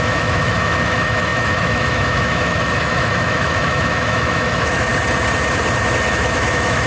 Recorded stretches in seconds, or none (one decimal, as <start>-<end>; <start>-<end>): 4.9-6.1